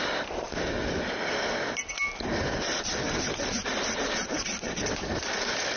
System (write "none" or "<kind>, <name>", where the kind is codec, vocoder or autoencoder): none